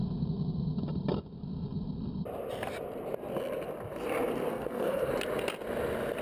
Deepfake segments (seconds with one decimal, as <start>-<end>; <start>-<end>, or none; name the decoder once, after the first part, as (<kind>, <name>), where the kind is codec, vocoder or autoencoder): 4.5-5.1 (codec, SNAC)